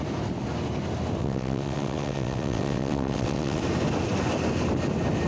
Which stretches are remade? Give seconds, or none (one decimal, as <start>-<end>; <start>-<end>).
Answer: 1.2-3.6

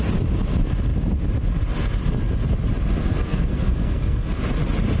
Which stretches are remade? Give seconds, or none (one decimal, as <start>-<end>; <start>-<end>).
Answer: 3.0-4.3

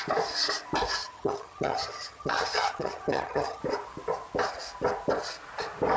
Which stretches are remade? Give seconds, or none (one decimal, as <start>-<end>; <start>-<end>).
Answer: 1.0-3.6